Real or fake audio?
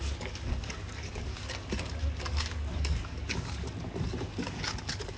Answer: fake